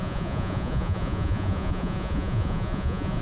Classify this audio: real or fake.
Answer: fake